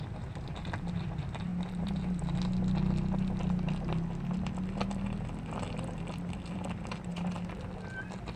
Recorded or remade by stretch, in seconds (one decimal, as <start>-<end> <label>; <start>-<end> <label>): 0.0-1.5 remade; 1.5-5.7 recorded; 5.7-7.1 remade; 7.1-8.4 recorded

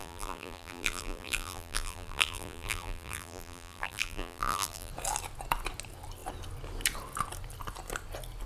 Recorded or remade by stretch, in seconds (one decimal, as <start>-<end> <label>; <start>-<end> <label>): 0.0-4.9 remade; 4.9-8.5 recorded